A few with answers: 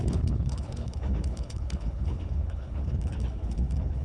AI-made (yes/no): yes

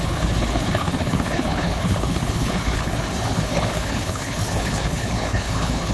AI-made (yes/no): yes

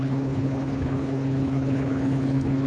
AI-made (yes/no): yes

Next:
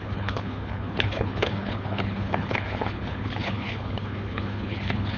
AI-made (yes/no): yes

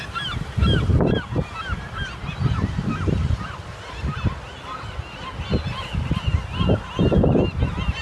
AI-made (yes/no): no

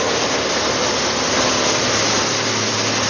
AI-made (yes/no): no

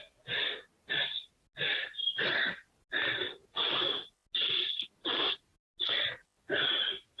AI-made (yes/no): no